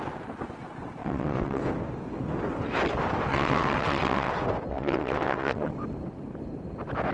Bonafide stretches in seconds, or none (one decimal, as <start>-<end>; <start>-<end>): 0.0-1.0; 1.6-3.3; 4.3-4.7; 5.7-7.1